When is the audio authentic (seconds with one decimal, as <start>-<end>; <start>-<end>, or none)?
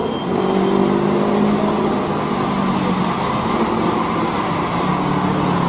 0.0-5.7